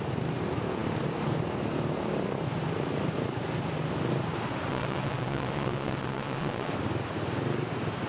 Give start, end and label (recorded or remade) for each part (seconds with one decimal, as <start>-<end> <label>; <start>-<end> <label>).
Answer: 0.0-4.7 recorded; 4.7-6.7 remade; 6.7-8.1 recorded